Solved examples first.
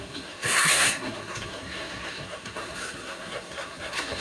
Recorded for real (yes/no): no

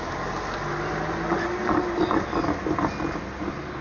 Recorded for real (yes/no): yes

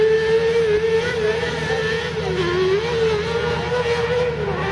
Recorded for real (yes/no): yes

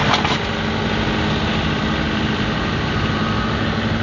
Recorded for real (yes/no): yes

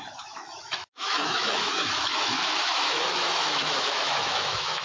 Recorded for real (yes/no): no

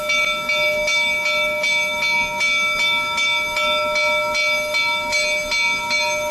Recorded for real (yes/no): yes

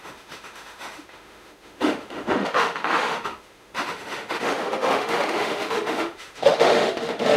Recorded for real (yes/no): no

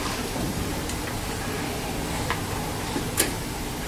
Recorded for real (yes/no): no